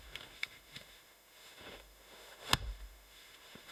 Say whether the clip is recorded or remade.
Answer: remade